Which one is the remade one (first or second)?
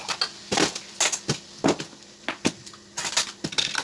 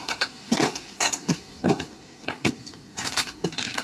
second